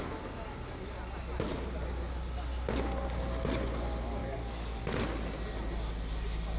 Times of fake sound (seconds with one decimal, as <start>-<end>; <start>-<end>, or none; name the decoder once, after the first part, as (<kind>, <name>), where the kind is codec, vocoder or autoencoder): 4.2-4.8 (codec, DAC)